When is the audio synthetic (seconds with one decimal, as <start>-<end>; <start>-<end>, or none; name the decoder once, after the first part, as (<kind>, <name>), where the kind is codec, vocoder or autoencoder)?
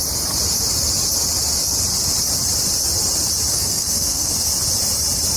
3.5-4.3 (codec, SNAC)